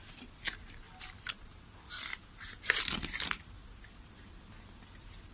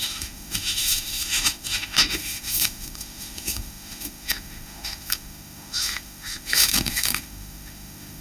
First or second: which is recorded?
first